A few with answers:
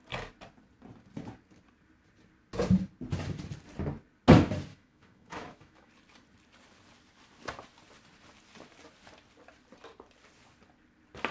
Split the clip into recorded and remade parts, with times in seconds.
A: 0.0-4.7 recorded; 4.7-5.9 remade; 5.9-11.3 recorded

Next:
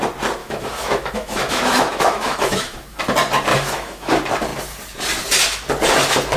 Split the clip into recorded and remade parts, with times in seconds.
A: 0.0-0.4 recorded; 0.4-3.0 remade; 3.0-3.5 recorded; 3.5-4.1 remade; 4.1-6.4 recorded

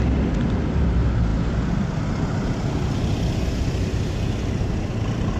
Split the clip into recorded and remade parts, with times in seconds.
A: 0.0-5.4 recorded

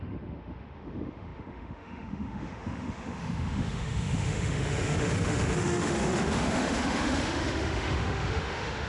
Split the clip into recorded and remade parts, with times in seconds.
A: 0.0-8.9 remade